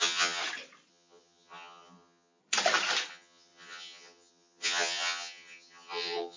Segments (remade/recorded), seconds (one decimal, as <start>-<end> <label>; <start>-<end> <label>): 0.0-0.4 remade; 0.4-0.9 recorded; 0.9-2.4 remade; 2.4-3.1 recorded; 3.1-6.4 remade